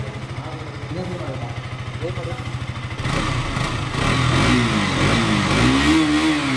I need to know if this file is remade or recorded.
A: recorded